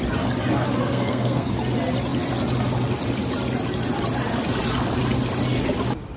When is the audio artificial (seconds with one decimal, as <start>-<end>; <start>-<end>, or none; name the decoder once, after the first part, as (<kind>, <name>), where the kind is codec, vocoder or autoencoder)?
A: 0.8-1.5 (codec, SNAC)